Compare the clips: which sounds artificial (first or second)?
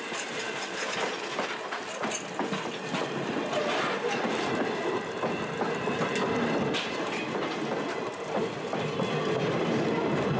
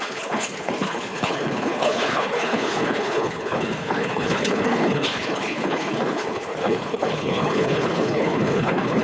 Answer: second